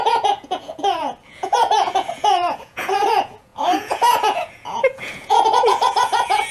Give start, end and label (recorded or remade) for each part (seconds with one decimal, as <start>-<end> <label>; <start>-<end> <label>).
0.0-6.5 remade

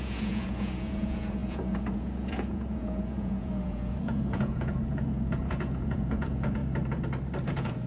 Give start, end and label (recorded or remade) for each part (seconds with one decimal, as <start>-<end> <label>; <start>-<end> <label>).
0.0-6.6 remade; 6.6-7.5 recorded; 7.5-7.9 remade